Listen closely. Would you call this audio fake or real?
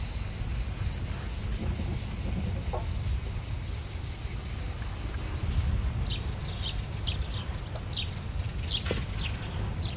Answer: real